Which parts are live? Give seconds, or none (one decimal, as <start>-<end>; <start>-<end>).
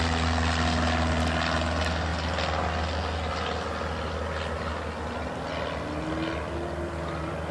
0.0-7.5